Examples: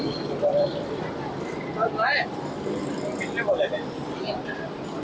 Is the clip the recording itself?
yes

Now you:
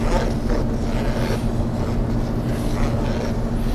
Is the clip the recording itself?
yes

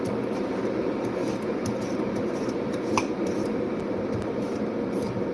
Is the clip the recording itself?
yes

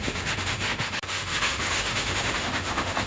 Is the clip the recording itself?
no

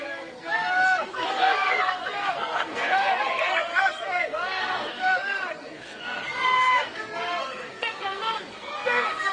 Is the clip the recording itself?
no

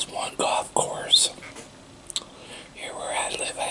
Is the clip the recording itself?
yes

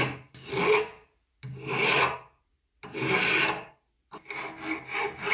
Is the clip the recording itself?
yes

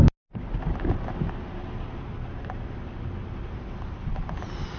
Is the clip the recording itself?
yes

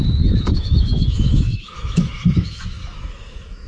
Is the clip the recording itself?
no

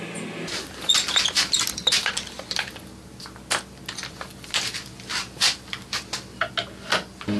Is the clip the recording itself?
yes